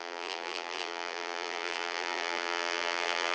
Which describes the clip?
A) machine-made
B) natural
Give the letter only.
A